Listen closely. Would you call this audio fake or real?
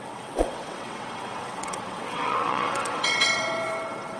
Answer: fake